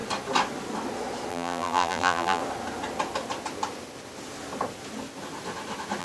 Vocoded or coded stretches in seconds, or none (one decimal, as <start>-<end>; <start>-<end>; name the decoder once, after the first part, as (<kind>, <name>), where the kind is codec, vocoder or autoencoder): 1.3-2.4 (vocoder, BigVGAN v2)